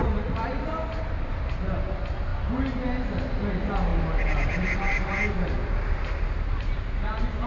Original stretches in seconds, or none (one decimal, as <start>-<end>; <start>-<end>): 0.0-7.5

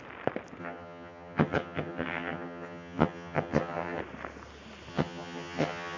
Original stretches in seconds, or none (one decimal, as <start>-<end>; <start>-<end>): 0.0-0.6; 4.0-4.9

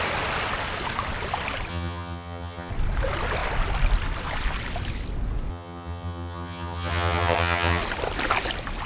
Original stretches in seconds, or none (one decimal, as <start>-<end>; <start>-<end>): 0.0-1.7; 2.7-5.5; 7.8-8.9